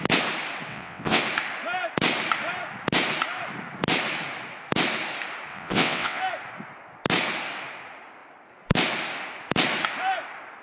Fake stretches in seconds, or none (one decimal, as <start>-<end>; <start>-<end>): 0.7-1.2; 5.5-6.2

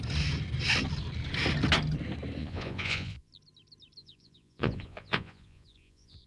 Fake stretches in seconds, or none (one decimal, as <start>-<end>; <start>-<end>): 2.4-3.3; 4.0-6.3